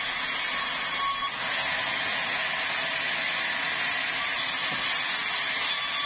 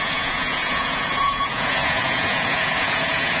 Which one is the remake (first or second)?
second